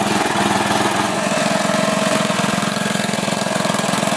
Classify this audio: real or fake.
fake